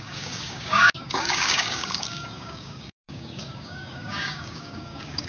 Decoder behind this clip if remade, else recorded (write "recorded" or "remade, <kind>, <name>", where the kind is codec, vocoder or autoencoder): remade, codec, DAC